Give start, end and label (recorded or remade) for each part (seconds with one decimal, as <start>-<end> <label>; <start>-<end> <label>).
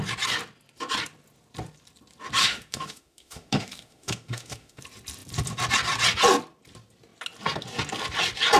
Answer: 0.0-2.4 recorded; 2.4-4.8 remade; 4.8-8.6 recorded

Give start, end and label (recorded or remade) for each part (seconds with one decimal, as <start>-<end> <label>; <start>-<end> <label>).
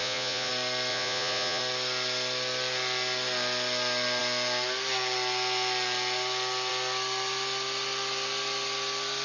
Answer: 0.0-0.5 remade; 0.5-0.9 recorded; 0.9-1.6 remade; 1.6-9.2 recorded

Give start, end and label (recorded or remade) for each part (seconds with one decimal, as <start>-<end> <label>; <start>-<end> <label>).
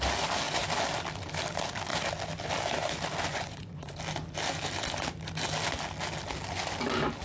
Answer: 0.0-3.3 recorded; 3.3-3.9 remade; 3.9-7.2 recorded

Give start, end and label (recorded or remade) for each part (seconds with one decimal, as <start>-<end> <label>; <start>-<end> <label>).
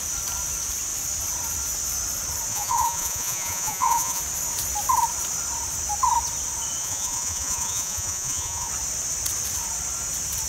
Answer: 0.0-2.5 recorded; 2.5-4.2 remade; 4.2-6.8 recorded; 6.8-8.7 remade; 8.7-10.5 recorded